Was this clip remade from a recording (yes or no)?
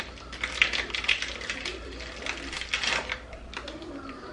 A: no